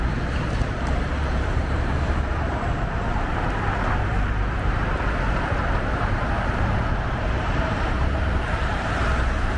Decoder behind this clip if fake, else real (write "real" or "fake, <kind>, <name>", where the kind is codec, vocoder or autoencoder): fake, vocoder, BigVGAN v2